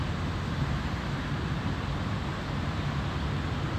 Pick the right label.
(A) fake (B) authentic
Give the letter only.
B